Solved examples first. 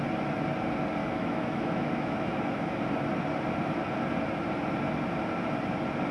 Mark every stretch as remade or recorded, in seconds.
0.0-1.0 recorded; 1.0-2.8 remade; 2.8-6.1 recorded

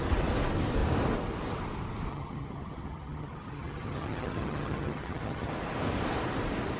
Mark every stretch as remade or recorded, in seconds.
0.0-2.1 recorded; 2.1-5.5 remade; 5.5-6.8 recorded

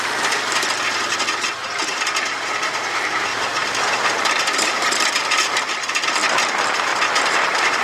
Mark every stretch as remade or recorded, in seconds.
0.0-1.6 recorded; 1.6-2.7 remade; 2.7-3.3 recorded; 3.3-4.7 remade; 4.7-6.9 recorded; 6.9-7.8 remade

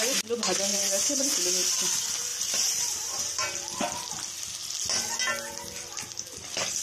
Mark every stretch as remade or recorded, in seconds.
0.0-0.7 recorded; 0.7-1.7 remade; 1.7-2.3 recorded; 2.3-3.5 remade; 3.5-6.8 recorded

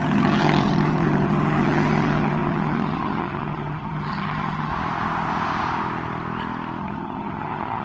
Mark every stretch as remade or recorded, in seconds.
0.0-4.7 remade; 4.7-6.8 recorded; 6.8-7.8 remade

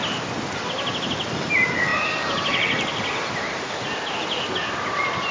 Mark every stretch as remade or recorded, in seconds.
0.0-5.3 recorded

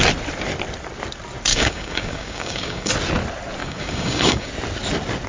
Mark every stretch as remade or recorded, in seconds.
0.0-1.5 recorded; 1.5-2.9 remade; 2.9-3.6 recorded; 3.6-4.5 remade; 4.5-5.3 recorded

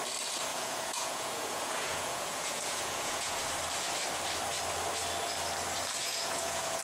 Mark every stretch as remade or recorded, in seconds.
0.0-0.5 recorded; 0.5-3.4 remade; 3.4-6.0 recorded; 6.0-6.8 remade